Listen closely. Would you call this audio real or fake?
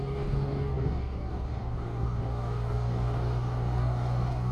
fake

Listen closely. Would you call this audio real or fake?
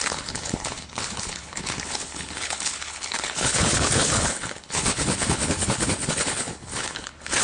fake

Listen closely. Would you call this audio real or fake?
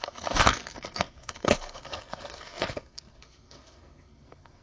fake